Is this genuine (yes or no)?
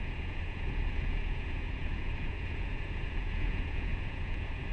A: no